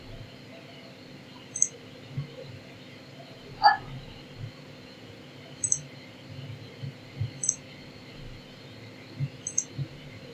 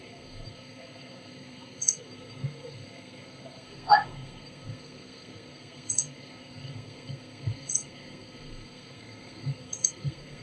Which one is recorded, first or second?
first